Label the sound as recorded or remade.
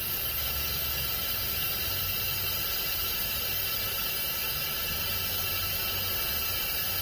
recorded